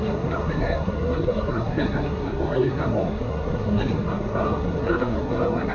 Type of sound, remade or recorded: remade